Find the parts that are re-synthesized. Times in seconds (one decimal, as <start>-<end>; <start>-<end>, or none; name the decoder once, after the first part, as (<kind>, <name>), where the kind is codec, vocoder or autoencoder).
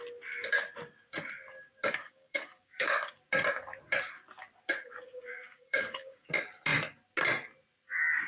2.0-3.1 (codec, DAC); 4.8-6.3